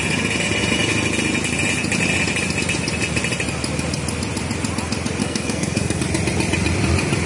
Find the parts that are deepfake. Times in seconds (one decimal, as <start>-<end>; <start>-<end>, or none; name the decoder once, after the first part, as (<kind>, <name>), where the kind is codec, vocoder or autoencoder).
5.2-6.0 (codec, SNAC)